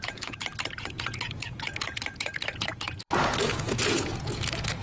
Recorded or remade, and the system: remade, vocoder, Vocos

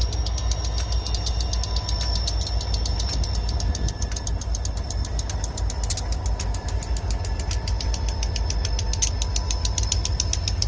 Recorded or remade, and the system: recorded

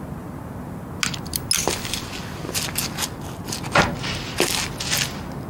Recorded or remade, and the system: recorded